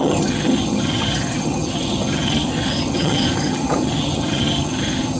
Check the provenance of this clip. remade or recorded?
remade